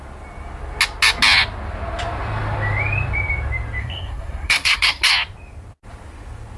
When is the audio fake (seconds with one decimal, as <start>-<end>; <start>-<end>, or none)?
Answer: 3.8-5.1